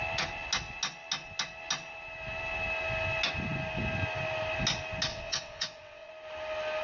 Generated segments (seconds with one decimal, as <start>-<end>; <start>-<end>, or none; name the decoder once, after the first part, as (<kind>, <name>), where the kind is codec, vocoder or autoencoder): 5.1-6.1 (vocoder, WaveNeXt)